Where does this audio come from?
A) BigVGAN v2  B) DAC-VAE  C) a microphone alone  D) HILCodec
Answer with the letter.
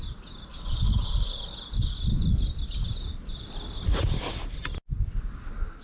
C